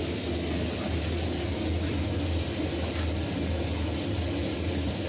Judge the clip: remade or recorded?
recorded